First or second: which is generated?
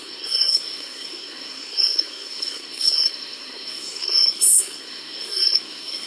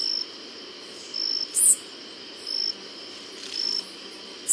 first